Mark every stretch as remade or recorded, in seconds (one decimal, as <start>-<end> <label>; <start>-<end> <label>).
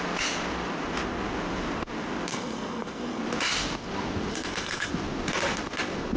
0.0-2.3 recorded; 2.3-3.2 remade; 3.2-4.3 recorded; 4.3-4.9 remade; 4.9-6.2 recorded